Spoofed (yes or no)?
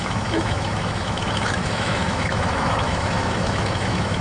yes